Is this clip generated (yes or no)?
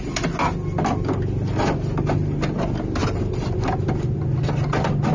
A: no